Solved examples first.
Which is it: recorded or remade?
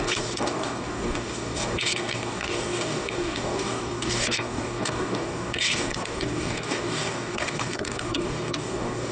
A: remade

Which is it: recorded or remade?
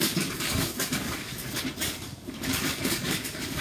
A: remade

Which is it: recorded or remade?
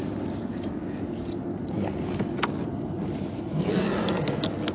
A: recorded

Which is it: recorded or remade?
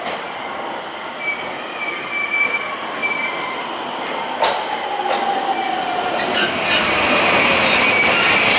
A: recorded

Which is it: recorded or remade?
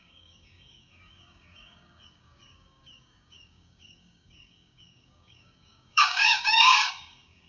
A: remade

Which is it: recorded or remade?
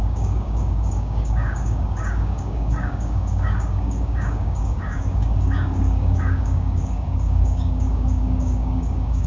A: remade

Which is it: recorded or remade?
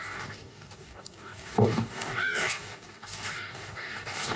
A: remade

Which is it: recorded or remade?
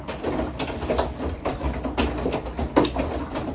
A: recorded